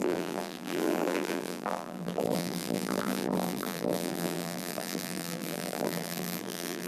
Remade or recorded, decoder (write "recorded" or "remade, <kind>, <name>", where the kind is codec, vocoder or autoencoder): remade, vocoder, BigVGAN v2